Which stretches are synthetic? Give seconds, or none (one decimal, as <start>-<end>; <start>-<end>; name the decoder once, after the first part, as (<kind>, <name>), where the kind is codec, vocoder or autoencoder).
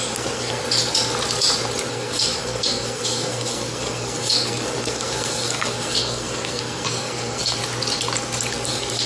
0.0-0.6 (codec, SNAC); 1.9-7.6; 8.7-9.1